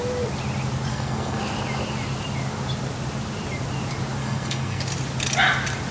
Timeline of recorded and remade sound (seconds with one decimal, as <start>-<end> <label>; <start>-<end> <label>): 0.0-0.9 recorded; 0.9-1.4 remade; 1.4-4.2 recorded; 4.2-4.8 remade; 4.8-5.9 recorded